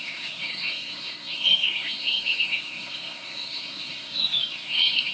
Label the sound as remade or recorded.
remade